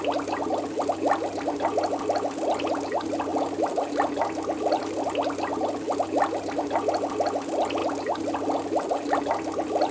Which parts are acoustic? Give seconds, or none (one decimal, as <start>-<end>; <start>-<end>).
0.0-9.9